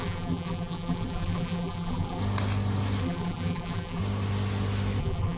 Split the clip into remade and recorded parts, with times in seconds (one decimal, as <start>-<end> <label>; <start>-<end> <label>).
0.0-2.2 remade; 2.2-3.0 recorded; 3.0-4.0 remade; 4.0-5.0 recorded; 5.0-5.4 remade